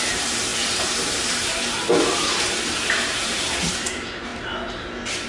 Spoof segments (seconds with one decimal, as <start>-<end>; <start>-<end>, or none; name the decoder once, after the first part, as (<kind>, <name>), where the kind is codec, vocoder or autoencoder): 0.0-4.3 (vocoder, BigVGAN v2)